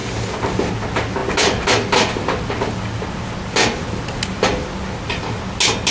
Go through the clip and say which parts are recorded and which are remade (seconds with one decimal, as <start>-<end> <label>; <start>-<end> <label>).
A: 0.0-5.9 recorded